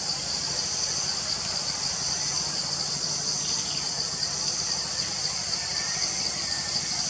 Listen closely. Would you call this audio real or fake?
real